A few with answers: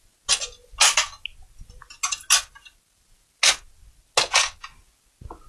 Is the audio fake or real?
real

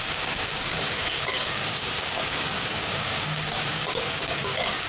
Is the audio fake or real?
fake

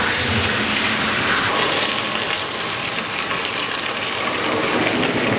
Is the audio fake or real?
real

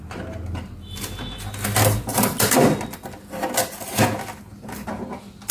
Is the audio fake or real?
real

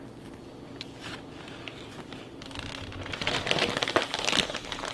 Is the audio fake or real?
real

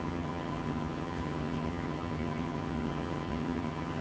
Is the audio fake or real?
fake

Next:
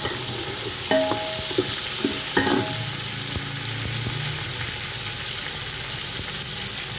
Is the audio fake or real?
real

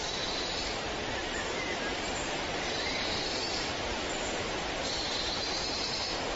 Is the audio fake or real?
fake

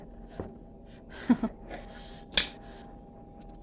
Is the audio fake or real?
real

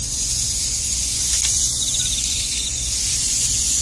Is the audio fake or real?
fake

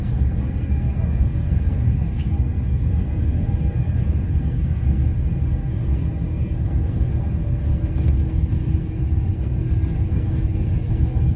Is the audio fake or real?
fake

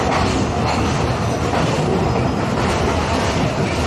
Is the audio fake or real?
real